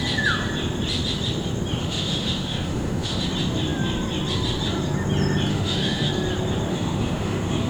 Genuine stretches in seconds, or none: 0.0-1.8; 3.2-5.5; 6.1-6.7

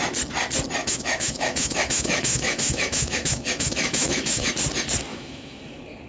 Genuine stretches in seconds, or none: 0.0-0.8; 4.5-5.1; 5.6-6.1